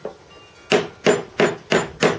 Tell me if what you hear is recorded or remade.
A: recorded